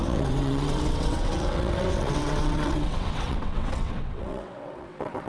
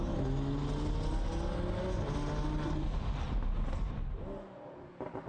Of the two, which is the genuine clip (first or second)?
second